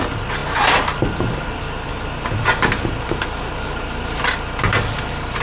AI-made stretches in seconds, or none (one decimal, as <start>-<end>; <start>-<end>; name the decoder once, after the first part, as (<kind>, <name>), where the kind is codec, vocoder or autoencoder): none